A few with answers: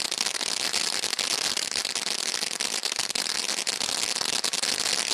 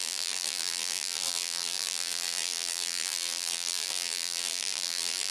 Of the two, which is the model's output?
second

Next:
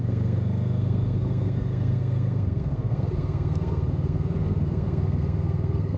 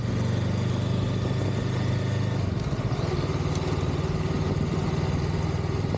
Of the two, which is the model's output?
first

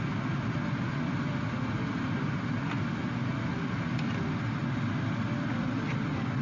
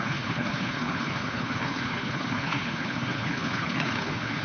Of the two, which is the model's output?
second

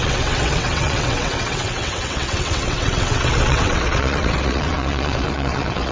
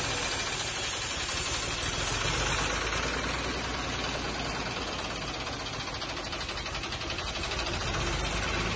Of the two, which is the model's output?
first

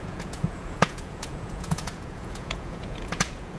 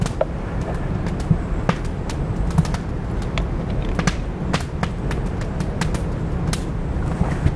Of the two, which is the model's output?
first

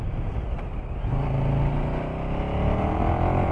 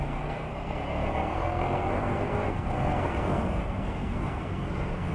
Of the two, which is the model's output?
second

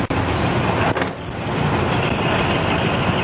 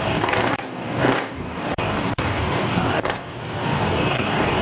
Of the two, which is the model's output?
second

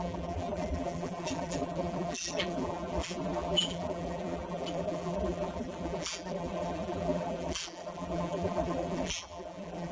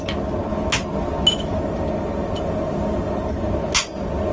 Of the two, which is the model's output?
first